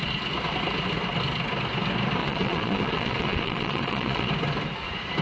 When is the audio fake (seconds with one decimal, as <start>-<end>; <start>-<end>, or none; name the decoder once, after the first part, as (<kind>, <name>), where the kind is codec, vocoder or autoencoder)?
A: 2.2-4.3 (vocoder, Vocos)

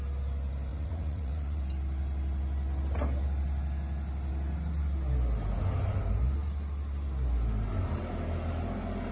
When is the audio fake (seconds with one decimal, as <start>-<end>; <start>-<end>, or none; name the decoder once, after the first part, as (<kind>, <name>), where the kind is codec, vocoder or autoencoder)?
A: 0.7-1.6 (vocoder, Vocos)

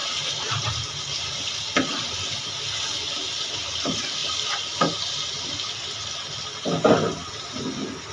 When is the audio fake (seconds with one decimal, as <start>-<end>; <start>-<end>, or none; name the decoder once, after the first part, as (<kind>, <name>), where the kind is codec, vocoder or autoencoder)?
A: none

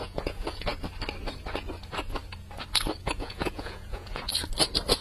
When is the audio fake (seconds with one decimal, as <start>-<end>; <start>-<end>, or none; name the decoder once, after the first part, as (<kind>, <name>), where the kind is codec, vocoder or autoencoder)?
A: 0.0-0.7 (vocoder, Vocos); 3.0-4.3

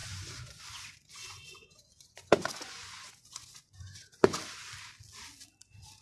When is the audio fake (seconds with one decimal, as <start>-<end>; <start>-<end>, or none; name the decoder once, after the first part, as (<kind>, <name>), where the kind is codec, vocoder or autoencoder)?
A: 0.0-0.6 (vocoder, Vocos); 1.1-4.4